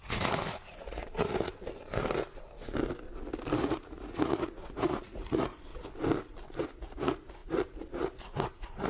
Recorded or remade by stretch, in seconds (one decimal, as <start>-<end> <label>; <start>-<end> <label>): 0.0-1.5 remade; 1.5-3.6 recorded; 3.6-5.7 remade; 5.7-6.6 recorded; 6.6-8.9 remade

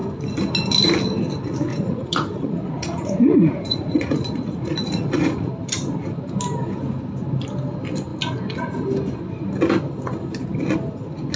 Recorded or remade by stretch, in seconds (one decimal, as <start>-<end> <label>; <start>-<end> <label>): 0.0-1.7 recorded; 1.7-5.5 remade; 5.5-11.4 recorded